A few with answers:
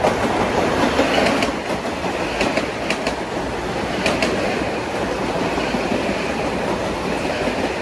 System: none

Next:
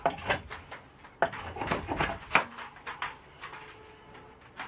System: none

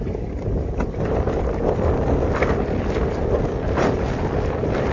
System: none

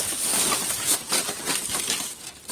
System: none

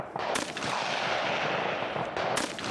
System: none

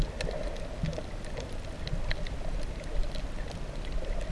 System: none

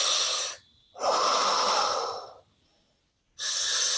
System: none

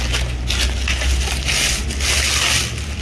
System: none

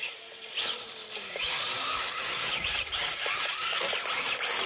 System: none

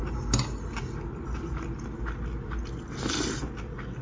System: none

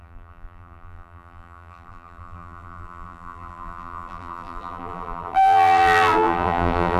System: vocoder, BigVGAN v2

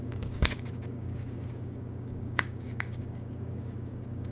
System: codec, DAC